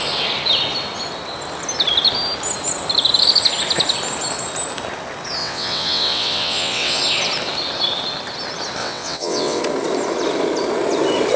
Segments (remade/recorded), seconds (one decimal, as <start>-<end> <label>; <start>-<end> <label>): 0.0-5.4 recorded; 5.4-7.0 remade; 7.0-8.8 recorded; 8.8-9.6 remade; 9.6-11.4 recorded

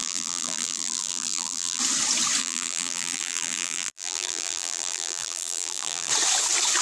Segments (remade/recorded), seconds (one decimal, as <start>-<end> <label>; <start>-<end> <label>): 0.0-1.8 remade; 1.8-2.4 recorded; 2.4-6.1 remade; 6.1-6.8 recorded

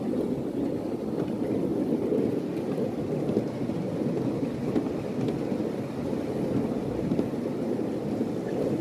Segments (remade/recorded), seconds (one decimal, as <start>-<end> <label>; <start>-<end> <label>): 0.0-8.8 recorded